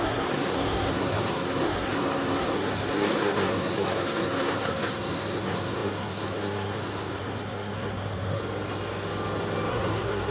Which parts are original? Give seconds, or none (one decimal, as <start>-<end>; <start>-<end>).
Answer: 8.4-9.7